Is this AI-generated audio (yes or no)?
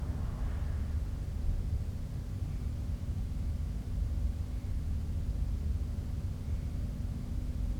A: no